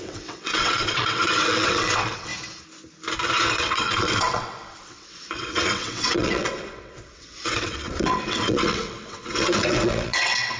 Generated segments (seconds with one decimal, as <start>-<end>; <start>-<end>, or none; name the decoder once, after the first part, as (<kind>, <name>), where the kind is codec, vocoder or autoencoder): 0.0-2.3 (vocoder, WaveNeXt); 3.5-10.6